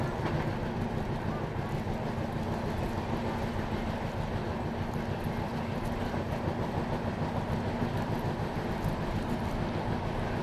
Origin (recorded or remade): recorded